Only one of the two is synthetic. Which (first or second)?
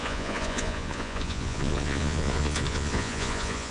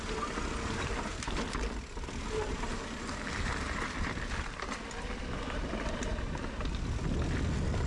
first